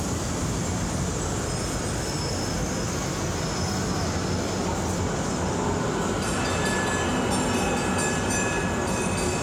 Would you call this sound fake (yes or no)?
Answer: no